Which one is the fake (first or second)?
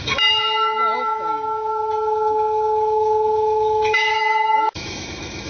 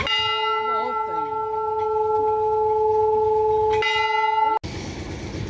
first